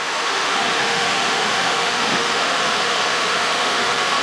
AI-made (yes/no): yes